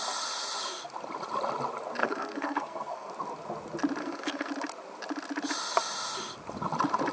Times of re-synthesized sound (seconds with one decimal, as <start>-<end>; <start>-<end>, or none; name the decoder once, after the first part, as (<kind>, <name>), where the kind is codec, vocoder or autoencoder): 2.0-3.1 (codec, SNAC); 4.0-4.5